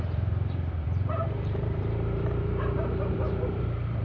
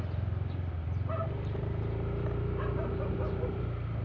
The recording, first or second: second